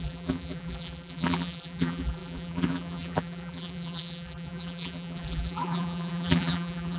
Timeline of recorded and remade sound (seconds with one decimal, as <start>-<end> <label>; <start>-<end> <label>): 0.0-7.0 remade